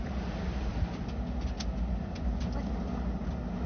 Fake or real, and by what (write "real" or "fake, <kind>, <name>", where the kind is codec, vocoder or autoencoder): real